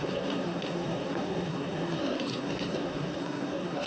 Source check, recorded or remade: remade